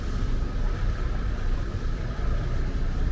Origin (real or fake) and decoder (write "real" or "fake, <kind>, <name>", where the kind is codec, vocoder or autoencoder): real